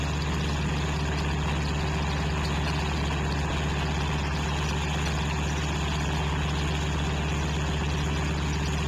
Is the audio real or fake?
real